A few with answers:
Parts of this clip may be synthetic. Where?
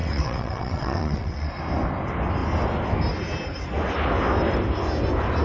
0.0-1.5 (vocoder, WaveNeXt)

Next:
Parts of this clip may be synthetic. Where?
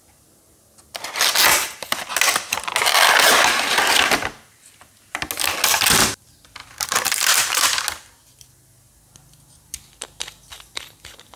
6.6-7.8 (vocoder, BigVGAN v2)